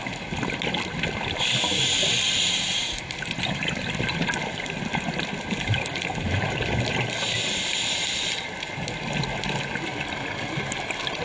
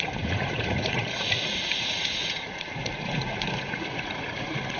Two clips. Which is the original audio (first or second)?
first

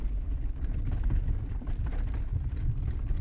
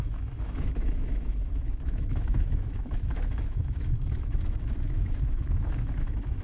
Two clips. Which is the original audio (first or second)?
first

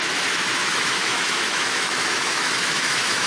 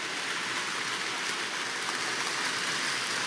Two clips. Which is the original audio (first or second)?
second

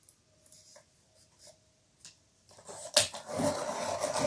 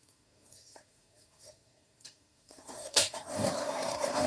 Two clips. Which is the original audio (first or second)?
first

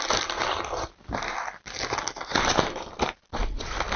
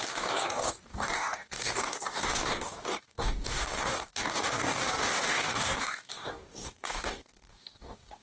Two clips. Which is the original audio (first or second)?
first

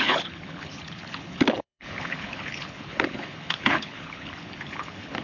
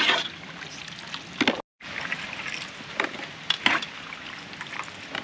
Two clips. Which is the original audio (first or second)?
second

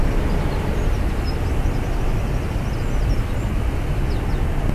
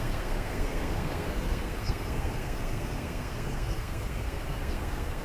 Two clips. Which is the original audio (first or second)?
first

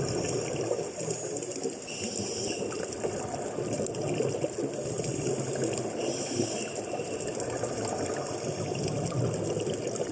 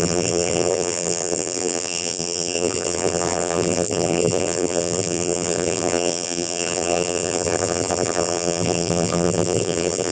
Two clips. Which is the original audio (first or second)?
first